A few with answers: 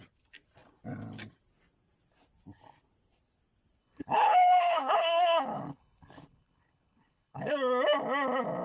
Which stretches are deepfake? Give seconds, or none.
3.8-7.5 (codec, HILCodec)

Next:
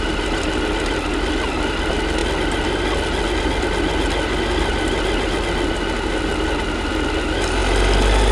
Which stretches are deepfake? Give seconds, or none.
none

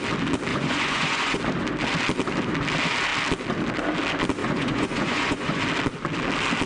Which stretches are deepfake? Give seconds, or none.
0.5-1.4 (vocoder, Vocos); 4.4-5.6

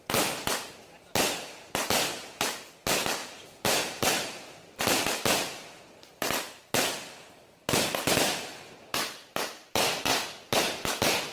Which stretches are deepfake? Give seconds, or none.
3.2-4.8 (vocoder, BigVGAN v2); 8.9-10.4

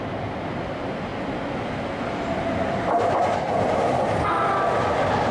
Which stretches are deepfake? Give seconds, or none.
none

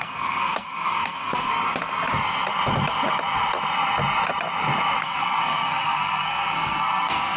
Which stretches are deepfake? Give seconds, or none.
0.0-1.5 (codec, SNAC); 5.0-7.4

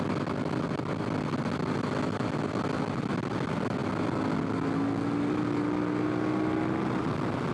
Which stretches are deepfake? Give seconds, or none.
none